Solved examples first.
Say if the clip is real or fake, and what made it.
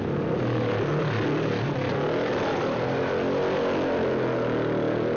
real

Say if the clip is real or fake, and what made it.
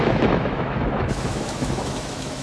fake, autoencoder, DAC-VAE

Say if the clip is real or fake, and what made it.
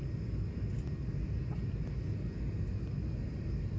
real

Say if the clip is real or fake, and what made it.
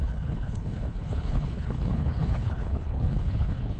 fake, codec, HILCodec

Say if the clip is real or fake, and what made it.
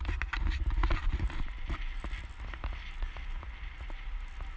real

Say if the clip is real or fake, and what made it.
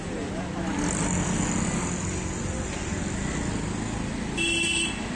real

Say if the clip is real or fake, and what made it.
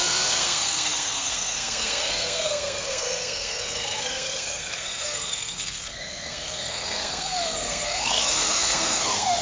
fake, codec, SNAC